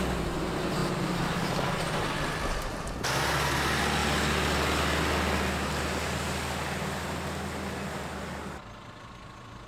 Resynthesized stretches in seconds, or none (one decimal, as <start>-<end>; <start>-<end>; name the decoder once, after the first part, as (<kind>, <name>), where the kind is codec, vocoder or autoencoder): 0.8-1.5 (vocoder, BigVGAN v2)